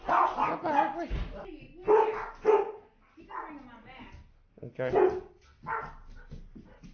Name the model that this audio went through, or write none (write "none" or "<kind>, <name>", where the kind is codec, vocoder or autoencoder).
none